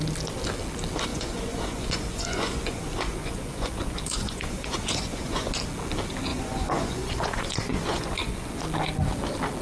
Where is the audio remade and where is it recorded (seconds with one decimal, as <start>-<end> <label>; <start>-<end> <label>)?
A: 0.0-1.1 recorded; 1.1-5.5 remade; 5.5-6.3 recorded; 6.3-8.6 remade; 8.6-9.6 recorded